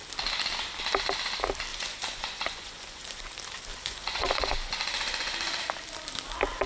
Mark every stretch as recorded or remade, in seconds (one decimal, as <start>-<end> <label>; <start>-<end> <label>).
0.0-1.7 recorded; 1.7-3.3 remade; 3.3-3.7 recorded; 3.7-5.6 remade; 5.6-6.7 recorded